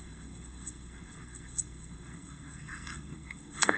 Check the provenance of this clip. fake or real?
fake